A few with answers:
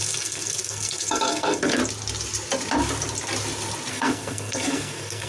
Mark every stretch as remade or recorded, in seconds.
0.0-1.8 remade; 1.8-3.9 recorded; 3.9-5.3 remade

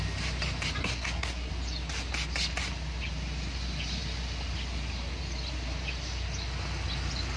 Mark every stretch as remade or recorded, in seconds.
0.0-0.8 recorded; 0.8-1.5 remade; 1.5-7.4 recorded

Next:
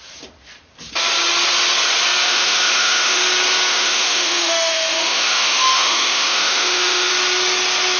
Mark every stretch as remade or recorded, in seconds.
0.0-2.2 recorded; 2.2-3.2 remade; 3.2-3.7 recorded; 3.7-7.1 remade; 7.1-8.0 recorded

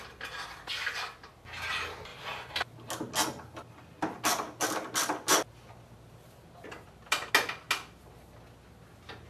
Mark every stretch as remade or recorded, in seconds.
0.0-9.3 recorded

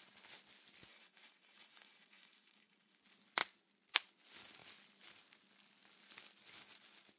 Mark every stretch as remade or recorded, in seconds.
0.0-0.9 recorded; 0.9-3.0 remade; 3.0-7.2 recorded

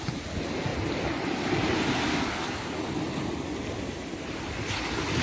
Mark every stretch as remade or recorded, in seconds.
0.0-5.2 recorded